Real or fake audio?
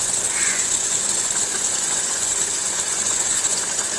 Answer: fake